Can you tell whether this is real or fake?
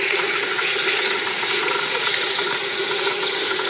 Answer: fake